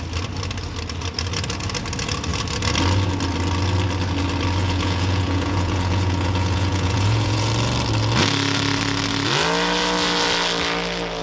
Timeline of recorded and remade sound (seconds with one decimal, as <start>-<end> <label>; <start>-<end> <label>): 0.0-4.6 recorded; 4.6-7.5 remade; 7.5-11.2 recorded